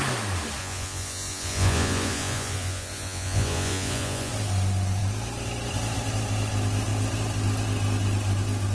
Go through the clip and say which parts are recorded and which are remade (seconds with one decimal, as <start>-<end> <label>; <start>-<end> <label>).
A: 0.0-0.6 recorded; 0.6-4.3 remade; 4.3-8.7 recorded